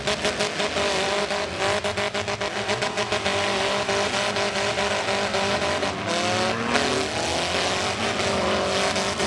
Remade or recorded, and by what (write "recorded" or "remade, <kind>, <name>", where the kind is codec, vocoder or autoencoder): recorded